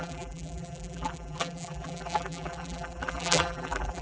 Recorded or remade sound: remade